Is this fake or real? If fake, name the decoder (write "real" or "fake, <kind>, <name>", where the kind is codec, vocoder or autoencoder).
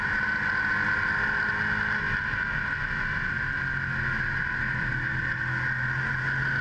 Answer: real